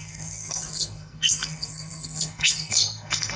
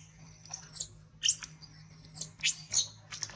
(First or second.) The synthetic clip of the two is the first